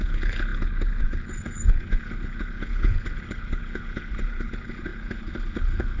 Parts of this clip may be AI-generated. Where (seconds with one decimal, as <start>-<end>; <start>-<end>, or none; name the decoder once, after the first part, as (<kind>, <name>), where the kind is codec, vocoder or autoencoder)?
0.0-6.0 (codec, HILCodec)